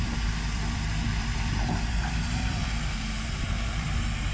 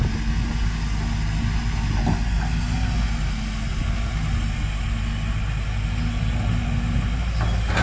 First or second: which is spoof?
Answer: first